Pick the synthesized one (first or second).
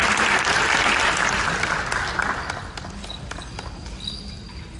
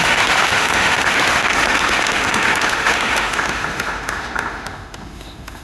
second